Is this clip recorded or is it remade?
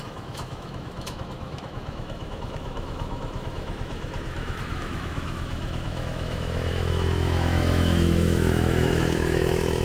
remade